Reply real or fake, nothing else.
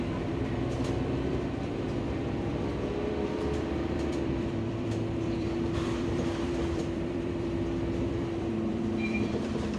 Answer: fake